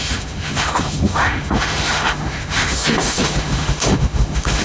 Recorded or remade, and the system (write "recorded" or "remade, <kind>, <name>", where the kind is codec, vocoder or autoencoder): remade, autoencoder, DAC-VAE